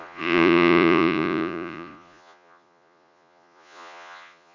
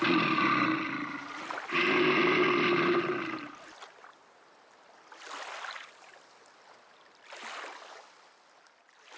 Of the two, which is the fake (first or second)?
first